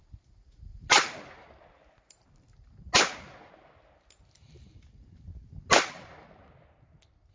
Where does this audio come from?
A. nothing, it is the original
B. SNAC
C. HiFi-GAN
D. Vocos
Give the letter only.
A